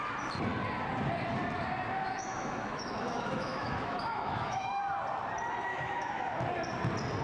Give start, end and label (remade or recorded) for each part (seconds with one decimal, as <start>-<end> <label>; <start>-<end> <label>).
0.0-2.0 recorded; 2.0-4.8 remade; 4.8-5.7 recorded; 5.7-6.4 remade; 6.4-7.2 recorded